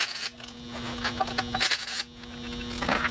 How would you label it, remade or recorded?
recorded